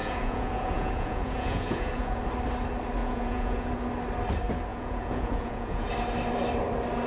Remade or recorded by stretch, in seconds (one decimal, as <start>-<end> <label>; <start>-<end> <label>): 0.0-2.2 remade; 2.2-3.0 recorded; 3.0-3.7 remade; 3.7-4.7 recorded; 4.7-5.9 remade; 5.9-7.1 recorded